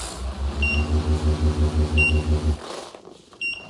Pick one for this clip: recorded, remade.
recorded